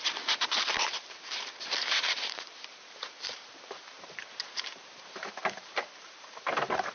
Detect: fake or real fake